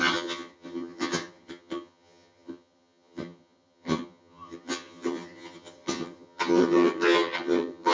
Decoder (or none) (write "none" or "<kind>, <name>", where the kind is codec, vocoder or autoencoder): vocoder, HiFi-GAN